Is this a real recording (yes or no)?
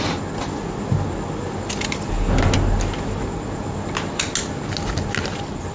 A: yes